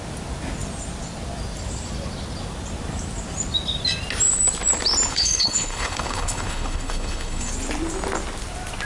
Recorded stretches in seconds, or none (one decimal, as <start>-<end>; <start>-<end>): 0.0-5.1; 7.5-8.8